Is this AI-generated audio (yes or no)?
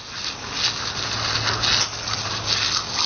no